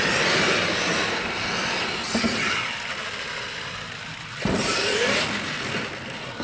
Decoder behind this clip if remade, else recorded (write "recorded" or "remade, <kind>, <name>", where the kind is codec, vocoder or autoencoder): recorded